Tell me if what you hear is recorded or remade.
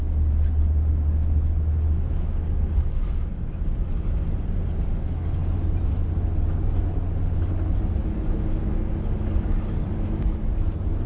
recorded